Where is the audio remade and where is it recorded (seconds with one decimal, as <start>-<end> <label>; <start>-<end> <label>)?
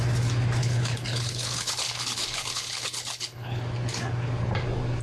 0.0-0.6 recorded; 0.6-3.6 remade; 3.6-5.0 recorded